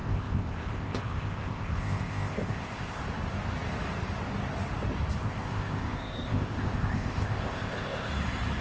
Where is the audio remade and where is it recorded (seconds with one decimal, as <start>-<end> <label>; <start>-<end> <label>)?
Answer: 0.0-3.0 remade; 3.0-5.2 recorded; 5.2-8.1 remade; 8.1-8.6 recorded